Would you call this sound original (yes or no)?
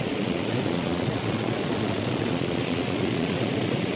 no